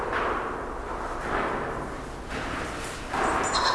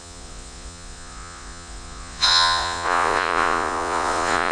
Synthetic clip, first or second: second